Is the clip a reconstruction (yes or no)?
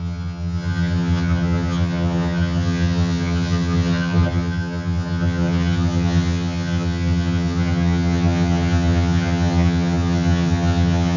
yes